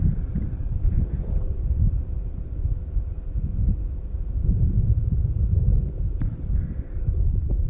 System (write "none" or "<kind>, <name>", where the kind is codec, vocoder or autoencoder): none